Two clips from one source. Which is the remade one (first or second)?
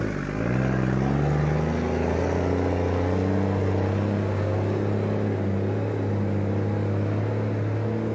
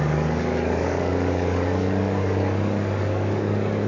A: second